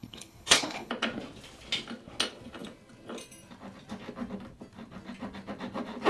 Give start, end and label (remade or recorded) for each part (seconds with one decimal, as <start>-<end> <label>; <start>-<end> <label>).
0.0-0.9 remade; 0.9-6.1 recorded